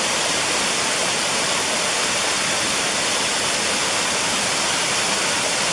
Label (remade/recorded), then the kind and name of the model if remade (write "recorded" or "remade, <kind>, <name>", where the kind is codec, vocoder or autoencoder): recorded